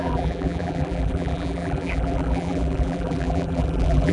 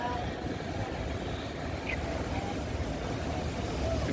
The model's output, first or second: first